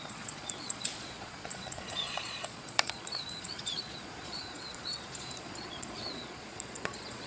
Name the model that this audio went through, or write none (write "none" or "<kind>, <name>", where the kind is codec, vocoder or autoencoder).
vocoder, Vocos